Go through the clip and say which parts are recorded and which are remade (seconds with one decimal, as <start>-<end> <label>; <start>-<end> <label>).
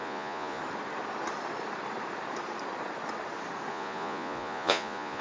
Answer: 0.0-0.6 remade; 0.6-3.7 recorded; 3.7-5.2 remade